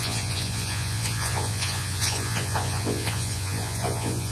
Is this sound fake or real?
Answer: fake